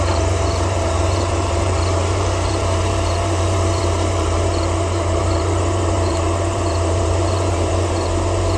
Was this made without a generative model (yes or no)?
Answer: no